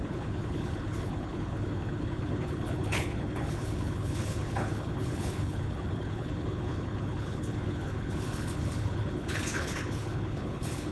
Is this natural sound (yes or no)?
no